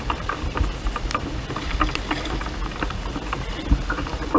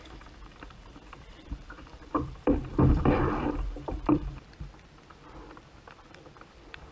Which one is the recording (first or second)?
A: first